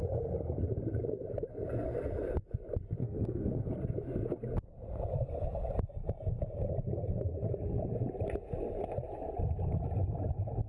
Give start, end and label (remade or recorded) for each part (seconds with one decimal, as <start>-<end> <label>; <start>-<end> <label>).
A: 0.0-3.0 recorded; 3.0-3.7 remade; 3.7-10.7 recorded